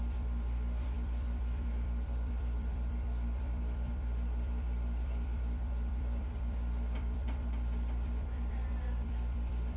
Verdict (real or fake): fake